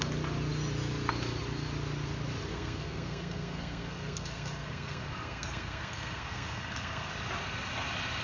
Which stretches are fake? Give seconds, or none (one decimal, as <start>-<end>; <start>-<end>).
2.5-7.1